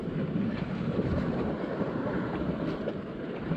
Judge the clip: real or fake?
fake